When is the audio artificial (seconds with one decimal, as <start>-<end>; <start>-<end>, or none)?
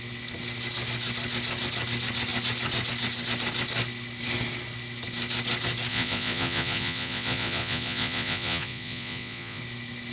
5.9-9.6